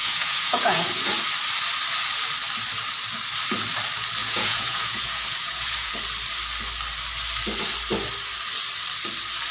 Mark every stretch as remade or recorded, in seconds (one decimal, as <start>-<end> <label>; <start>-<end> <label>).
0.0-1.1 remade; 1.1-4.2 recorded; 4.2-5.9 remade; 5.9-9.5 recorded